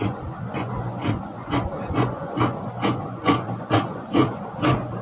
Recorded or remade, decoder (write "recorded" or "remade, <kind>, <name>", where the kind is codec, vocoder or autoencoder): remade, vocoder, Vocos